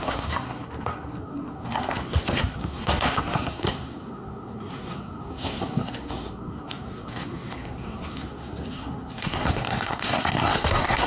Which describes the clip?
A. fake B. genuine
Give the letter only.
A